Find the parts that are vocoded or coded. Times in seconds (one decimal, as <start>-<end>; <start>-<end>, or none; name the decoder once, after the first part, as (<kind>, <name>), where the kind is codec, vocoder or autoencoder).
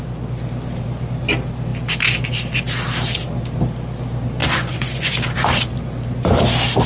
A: 4.4-5.1 (vocoder, Vocos)